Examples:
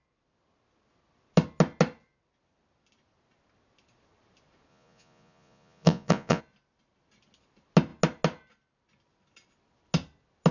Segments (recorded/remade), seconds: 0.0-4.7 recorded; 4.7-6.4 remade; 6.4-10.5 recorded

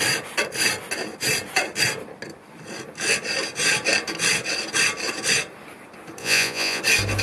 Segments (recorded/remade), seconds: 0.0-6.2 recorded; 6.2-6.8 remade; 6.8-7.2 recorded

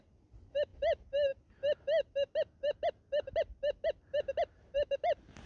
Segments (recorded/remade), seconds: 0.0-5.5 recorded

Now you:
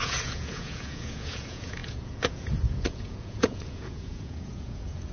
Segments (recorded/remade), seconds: 0.0-5.1 remade